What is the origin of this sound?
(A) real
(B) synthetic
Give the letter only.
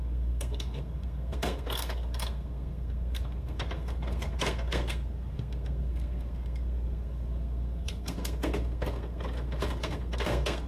B